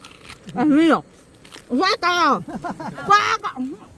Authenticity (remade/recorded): recorded